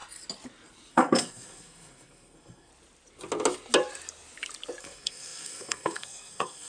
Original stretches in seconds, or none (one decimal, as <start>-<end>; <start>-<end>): 0.0-0.9; 2.7-4.8